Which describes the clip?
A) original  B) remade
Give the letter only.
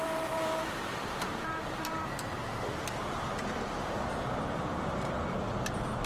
B